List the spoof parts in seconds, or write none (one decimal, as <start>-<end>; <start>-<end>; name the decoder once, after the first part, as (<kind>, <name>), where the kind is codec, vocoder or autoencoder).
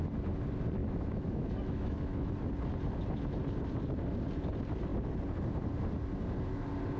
0.8-2.3 (autoencoder, DAC-VAE)